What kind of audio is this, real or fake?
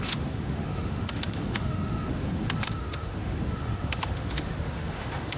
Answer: fake